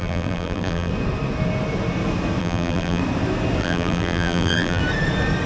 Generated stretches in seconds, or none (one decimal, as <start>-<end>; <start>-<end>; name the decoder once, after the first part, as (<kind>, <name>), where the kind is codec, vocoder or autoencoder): 0.0-0.9 (vocoder, BigVGAN v2); 2.4-3.0; 3.6-4.8